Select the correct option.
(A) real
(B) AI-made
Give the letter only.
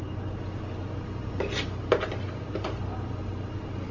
A